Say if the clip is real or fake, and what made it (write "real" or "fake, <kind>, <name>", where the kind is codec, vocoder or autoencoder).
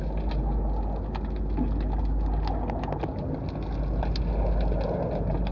real